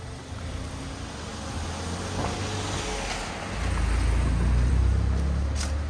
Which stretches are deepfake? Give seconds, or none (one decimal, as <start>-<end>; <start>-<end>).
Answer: none